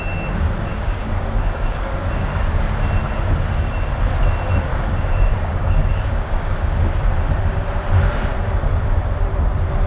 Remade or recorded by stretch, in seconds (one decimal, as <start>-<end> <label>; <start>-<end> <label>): 0.0-0.7 recorded; 0.7-2.6 remade; 2.6-4.7 recorded; 4.7-6.7 remade; 6.7-9.9 recorded